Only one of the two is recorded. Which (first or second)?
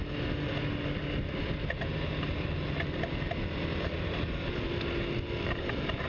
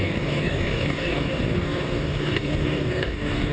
first